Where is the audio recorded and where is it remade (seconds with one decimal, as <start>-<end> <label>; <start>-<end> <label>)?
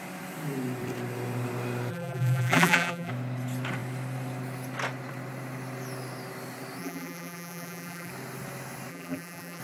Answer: 0.0-1.9 recorded; 1.9-3.1 remade; 3.1-6.8 recorded; 6.8-8.1 remade; 8.1-8.9 recorded; 8.9-9.6 remade